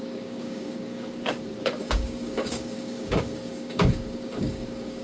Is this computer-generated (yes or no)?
yes